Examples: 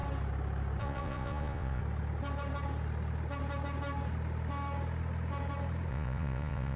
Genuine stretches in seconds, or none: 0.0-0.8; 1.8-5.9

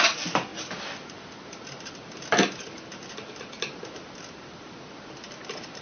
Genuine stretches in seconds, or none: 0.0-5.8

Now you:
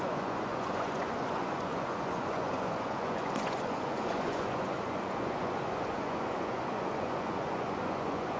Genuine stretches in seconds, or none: none